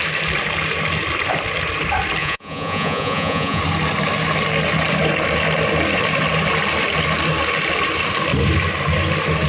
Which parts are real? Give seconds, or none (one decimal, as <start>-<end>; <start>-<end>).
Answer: 0.0-2.2; 3.6-9.5

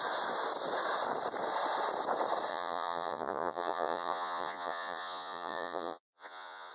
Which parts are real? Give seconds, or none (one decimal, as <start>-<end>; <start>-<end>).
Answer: 0.0-2.5

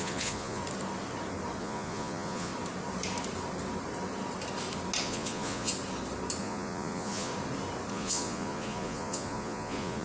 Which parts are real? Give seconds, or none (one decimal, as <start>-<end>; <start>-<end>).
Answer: 0.6-1.6; 2.5-5.0; 5.7-6.4; 7.3-7.9